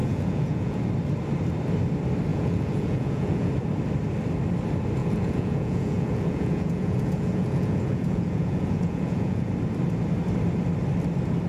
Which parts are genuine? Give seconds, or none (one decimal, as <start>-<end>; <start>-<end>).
0.8-2.3; 3.5-5.0; 9.5-11.5